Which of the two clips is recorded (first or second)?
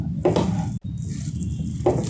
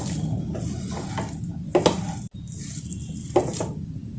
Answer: first